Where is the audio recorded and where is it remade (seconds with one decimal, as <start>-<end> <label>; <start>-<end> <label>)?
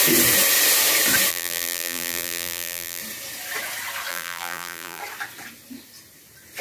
0.0-1.3 recorded; 1.3-3.0 remade; 3.0-4.1 recorded; 4.1-5.0 remade; 5.0-6.6 recorded